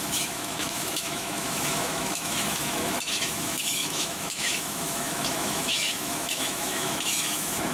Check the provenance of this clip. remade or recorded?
remade